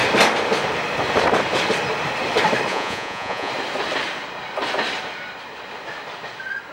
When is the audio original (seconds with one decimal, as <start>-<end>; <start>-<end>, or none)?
0.0-2.7; 3.5-6.7